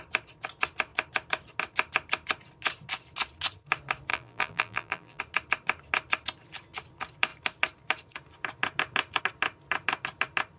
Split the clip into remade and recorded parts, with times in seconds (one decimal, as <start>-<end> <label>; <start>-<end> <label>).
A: 0.0-4.1 recorded; 4.1-5.2 remade; 5.2-10.6 recorded